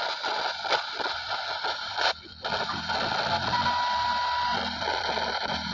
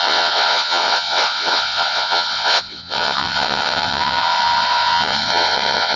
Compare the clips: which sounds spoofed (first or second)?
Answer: second